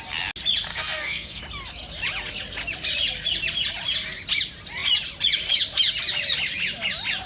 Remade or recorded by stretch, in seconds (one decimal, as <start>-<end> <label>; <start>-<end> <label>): 0.0-0.7 recorded; 0.7-1.4 remade; 1.4-7.3 recorded